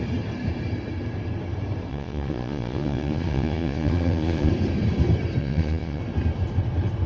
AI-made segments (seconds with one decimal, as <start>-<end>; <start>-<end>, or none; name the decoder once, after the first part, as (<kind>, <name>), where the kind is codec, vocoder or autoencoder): 1.9-4.5 (vocoder, Vocos); 5.4-6.0